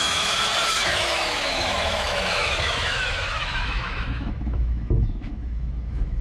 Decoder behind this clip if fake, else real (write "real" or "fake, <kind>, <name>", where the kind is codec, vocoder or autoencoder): fake, autoencoder, DAC-VAE